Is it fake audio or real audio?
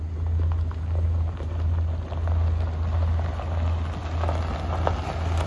real